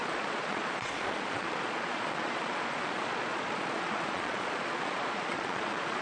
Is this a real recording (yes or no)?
no